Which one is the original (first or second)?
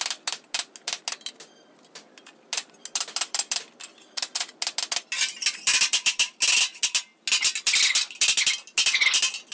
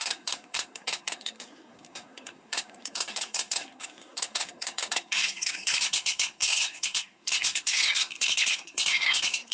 first